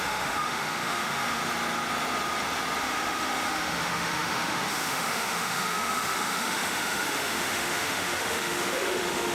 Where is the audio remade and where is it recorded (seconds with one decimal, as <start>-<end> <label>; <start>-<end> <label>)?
0.0-1.4 remade; 1.4-2.8 recorded; 2.8-9.3 remade